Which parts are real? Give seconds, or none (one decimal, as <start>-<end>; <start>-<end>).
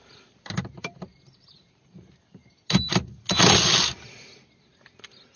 2.4-5.4